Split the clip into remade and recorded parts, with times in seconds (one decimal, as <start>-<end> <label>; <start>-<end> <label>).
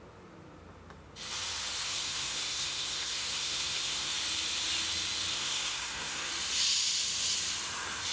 0.0-1.8 recorded; 1.8-4.1 remade; 4.1-5.3 recorded; 5.3-6.3 remade; 6.3-8.1 recorded